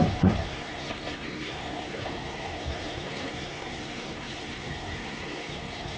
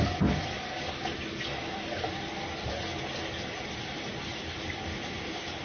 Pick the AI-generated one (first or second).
first